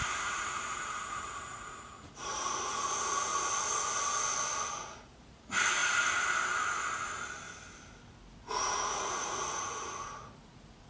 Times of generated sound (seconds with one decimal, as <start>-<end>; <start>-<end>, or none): 0.0-3.3; 4.8-5.8; 8.5-10.9